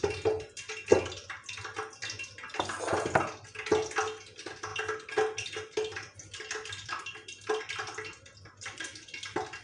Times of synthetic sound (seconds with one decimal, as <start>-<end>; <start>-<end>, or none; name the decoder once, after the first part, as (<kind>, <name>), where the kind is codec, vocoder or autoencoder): none